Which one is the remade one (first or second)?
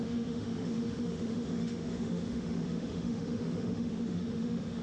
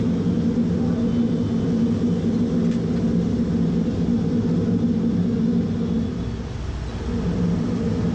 first